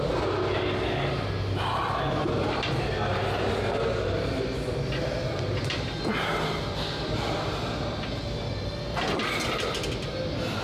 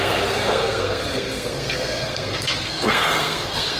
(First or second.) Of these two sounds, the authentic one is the first